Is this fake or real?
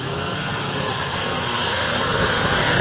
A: fake